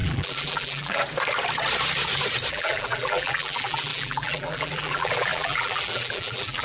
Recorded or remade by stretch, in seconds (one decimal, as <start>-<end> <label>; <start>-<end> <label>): 0.0-1.0 remade; 1.0-2.5 recorded; 2.5-6.6 remade